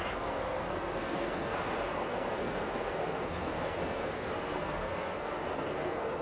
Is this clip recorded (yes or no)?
no